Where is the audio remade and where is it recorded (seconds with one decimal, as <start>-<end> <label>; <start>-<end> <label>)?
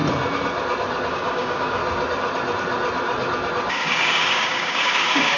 0.0-1.1 recorded; 1.1-1.8 remade; 1.8-3.7 recorded; 3.7-5.4 remade